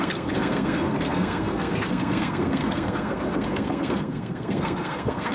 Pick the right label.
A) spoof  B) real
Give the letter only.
A